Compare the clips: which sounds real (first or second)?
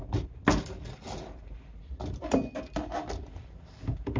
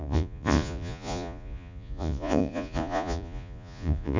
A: first